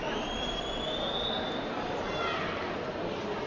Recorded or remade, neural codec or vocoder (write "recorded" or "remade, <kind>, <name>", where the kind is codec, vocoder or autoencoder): recorded